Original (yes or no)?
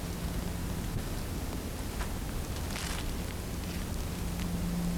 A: yes